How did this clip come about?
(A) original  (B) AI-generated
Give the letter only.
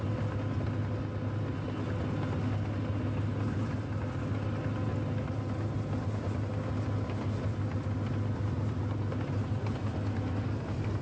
A